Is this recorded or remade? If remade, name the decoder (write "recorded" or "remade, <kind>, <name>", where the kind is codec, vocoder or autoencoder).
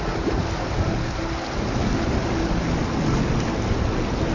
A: recorded